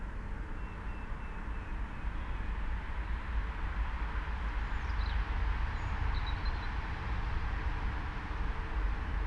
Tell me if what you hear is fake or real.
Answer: real